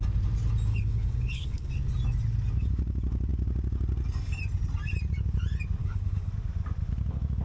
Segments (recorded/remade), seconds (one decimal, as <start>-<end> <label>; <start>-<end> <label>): 0.0-0.7 recorded; 0.7-1.7 remade; 1.7-5.8 recorded; 5.8-6.3 remade; 6.3-7.4 recorded